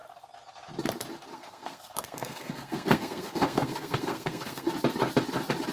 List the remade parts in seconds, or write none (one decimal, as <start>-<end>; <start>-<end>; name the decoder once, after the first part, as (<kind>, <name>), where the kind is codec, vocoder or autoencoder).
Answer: 1.3-4.7 (codec, SNAC)